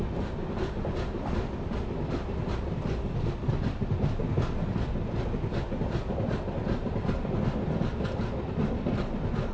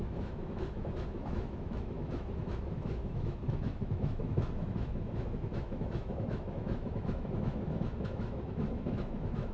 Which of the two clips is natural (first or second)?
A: first